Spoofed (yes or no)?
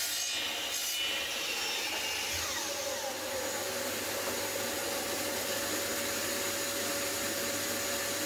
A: no